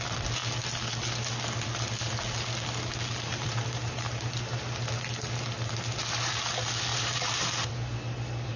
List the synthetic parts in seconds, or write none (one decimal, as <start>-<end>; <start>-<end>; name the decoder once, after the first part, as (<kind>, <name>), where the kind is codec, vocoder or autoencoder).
3.3-4.9 (vocoder, BigVGAN v2); 6.9-7.7